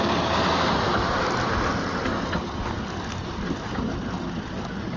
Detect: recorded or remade recorded